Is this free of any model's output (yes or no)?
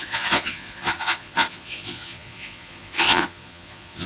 no